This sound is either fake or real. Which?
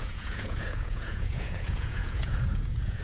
fake